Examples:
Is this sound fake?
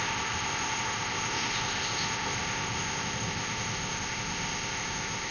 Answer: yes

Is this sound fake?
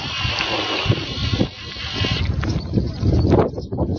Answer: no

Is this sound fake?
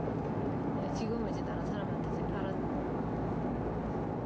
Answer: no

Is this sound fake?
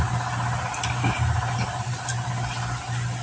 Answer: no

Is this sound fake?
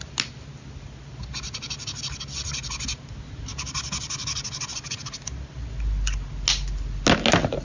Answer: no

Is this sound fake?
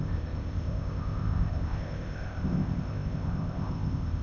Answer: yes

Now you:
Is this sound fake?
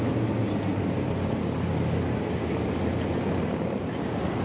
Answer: no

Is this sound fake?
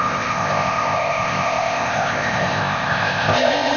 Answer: yes